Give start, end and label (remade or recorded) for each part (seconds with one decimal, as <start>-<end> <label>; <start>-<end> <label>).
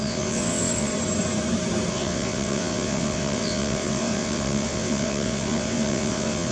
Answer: 0.0-0.9 remade; 0.9-1.9 recorded; 1.9-6.5 remade